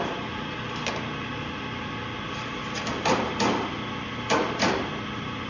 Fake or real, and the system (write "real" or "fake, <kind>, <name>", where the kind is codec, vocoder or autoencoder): real